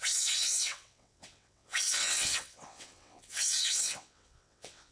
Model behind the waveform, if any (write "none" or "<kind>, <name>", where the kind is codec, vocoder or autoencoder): vocoder, WaveNeXt